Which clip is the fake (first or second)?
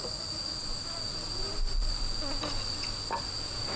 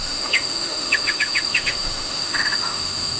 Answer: second